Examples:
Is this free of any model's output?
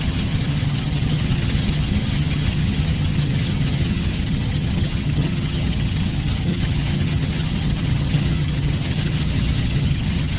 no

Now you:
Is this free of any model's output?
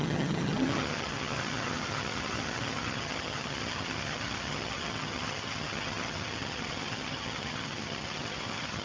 no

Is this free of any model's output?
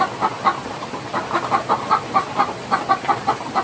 yes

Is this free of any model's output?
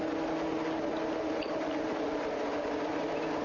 yes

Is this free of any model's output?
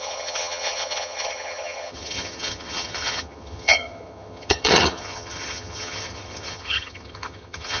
no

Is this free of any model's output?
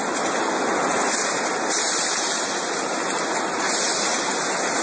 yes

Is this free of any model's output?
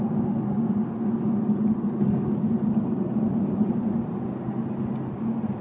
yes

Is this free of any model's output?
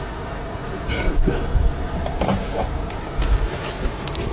yes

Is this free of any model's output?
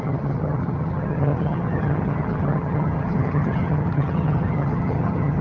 no